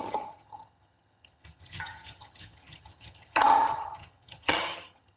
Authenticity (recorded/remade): remade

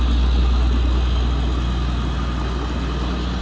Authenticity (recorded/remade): recorded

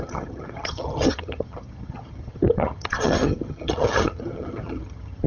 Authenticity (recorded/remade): remade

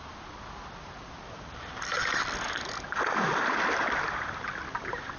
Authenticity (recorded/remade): recorded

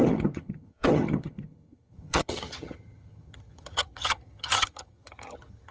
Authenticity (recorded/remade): remade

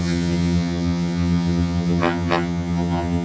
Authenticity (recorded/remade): remade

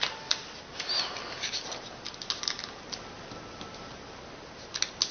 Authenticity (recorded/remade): recorded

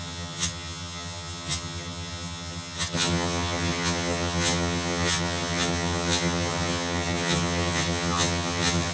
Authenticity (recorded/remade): remade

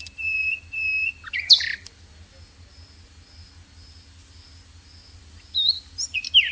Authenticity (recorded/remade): recorded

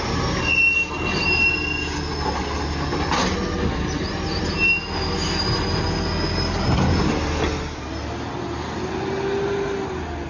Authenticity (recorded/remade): recorded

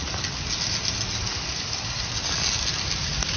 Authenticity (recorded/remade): recorded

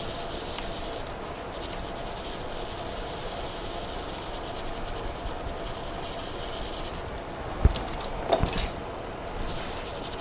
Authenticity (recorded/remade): recorded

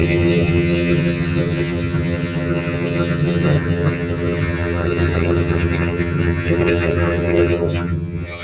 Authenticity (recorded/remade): remade